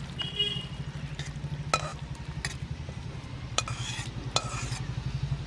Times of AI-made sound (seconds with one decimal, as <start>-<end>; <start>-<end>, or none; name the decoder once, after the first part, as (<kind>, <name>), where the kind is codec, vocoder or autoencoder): none